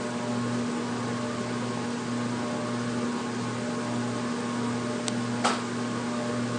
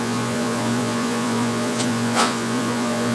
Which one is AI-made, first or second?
second